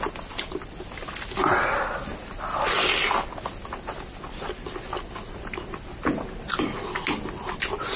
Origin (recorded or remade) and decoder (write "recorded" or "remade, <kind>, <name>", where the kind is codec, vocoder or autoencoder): recorded